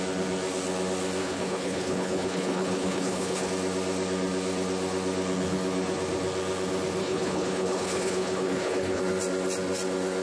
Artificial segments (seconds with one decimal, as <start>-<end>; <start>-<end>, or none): 1.2-3.5; 7.0-9.0